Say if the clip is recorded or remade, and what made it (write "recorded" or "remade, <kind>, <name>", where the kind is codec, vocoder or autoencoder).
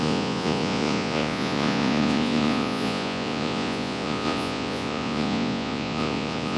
remade, vocoder, Vocos